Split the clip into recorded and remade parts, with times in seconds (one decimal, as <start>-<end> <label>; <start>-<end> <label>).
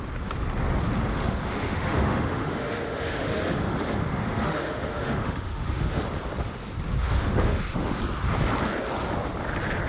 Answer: 0.0-1.1 recorded; 1.1-6.0 remade; 6.0-7.0 recorded; 7.0-8.0 remade; 8.0-9.9 recorded